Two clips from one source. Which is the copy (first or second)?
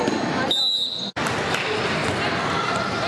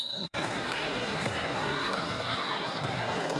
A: second